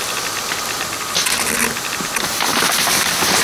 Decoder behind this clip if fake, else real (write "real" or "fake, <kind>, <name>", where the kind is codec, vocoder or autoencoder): real